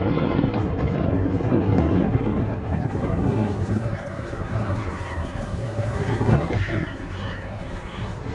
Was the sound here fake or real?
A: fake